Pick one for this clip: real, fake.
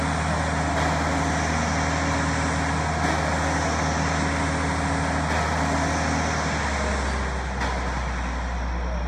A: real